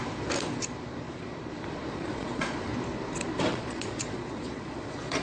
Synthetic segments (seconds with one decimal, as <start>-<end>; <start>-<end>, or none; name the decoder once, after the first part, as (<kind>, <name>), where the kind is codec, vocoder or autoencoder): 1.9-2.7 (vocoder, Vocos); 3.5-5.2